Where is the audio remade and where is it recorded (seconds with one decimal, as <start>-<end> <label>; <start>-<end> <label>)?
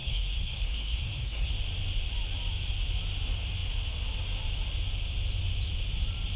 0.0-1.5 remade; 1.5-6.4 recorded